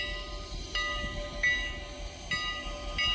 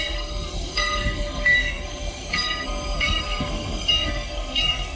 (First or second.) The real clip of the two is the first